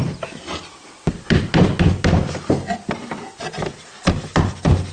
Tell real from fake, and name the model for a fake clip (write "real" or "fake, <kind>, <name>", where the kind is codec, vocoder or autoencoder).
real